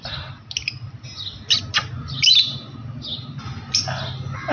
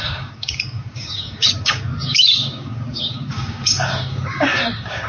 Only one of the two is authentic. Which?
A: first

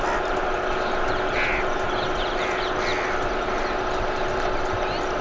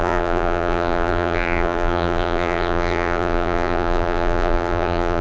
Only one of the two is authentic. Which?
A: first